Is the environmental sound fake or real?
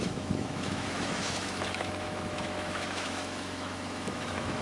fake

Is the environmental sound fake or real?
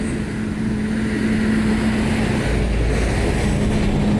real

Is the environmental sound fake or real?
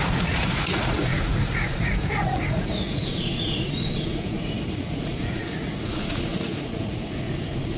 fake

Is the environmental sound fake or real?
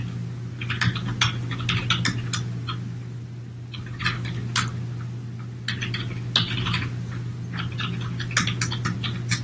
real